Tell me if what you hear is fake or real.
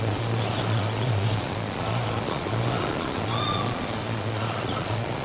fake